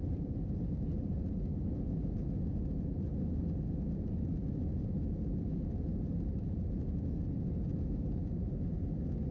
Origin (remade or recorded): recorded